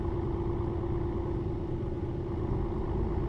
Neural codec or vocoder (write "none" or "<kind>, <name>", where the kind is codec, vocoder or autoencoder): none